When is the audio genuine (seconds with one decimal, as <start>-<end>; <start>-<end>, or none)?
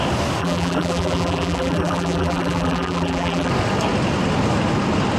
0.0-0.4; 3.5-5.2